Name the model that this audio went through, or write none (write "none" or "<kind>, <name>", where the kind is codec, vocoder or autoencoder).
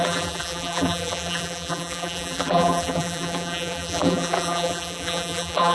vocoder, BigVGAN v2